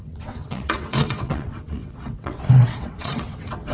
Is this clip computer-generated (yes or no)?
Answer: yes